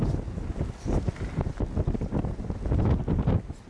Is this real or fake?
real